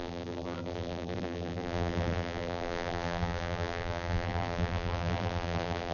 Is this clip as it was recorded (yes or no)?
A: no